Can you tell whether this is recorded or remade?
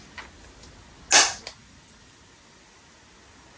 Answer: recorded